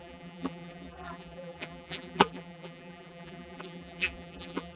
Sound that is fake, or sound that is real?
fake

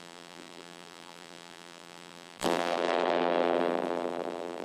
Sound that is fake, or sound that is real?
fake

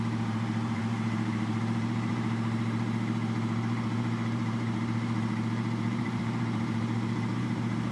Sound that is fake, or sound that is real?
fake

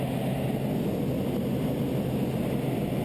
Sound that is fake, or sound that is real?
real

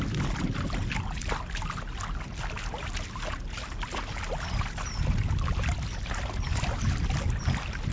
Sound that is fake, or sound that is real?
real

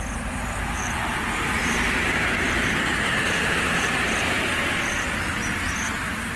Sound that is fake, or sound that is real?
fake